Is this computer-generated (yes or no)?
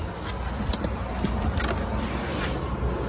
no